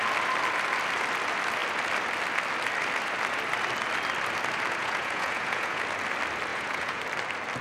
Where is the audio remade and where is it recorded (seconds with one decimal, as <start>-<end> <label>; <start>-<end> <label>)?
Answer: 0.0-4.8 recorded; 4.8-5.8 remade; 5.8-6.5 recorded; 6.5-7.0 remade; 7.0-7.6 recorded